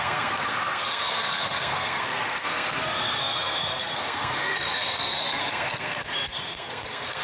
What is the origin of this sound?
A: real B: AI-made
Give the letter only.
B